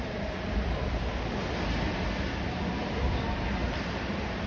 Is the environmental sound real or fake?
real